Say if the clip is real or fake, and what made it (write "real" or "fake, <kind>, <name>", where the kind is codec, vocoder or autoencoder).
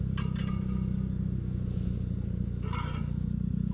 real